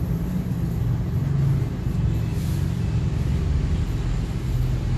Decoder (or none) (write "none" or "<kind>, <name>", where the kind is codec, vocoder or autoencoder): none